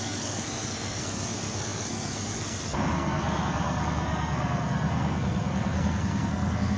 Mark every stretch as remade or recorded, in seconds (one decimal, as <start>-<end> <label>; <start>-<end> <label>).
0.0-6.8 remade